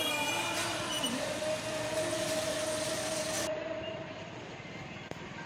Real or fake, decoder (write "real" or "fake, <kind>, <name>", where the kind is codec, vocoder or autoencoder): real